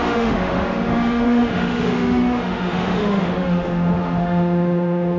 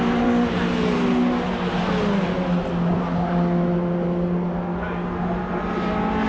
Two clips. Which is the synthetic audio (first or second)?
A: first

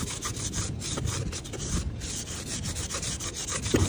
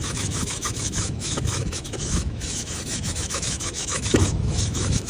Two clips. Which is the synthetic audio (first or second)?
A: second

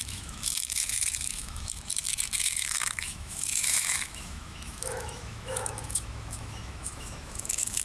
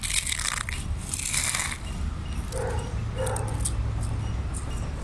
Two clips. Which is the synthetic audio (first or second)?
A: first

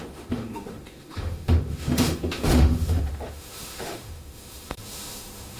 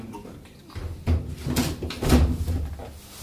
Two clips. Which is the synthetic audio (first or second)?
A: first